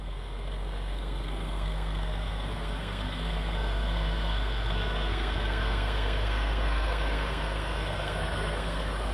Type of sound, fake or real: fake